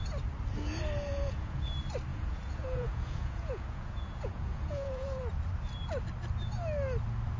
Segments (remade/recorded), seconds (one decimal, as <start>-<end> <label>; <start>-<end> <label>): 0.0-1.1 recorded; 1.1-1.7 remade; 1.7-2.1 recorded; 2.1-5.2 remade; 5.2-7.4 recorded